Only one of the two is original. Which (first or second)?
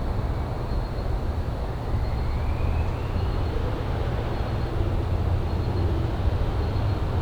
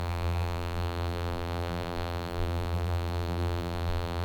first